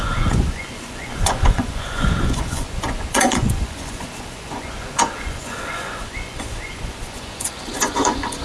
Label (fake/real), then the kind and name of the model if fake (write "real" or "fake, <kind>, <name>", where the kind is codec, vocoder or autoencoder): fake, vocoder, Vocos